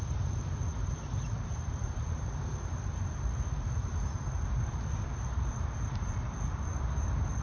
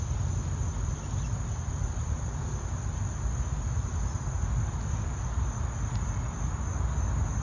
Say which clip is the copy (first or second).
first